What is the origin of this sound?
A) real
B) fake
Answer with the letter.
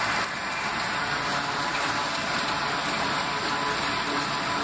A